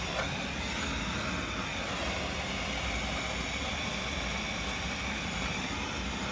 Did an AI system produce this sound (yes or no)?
no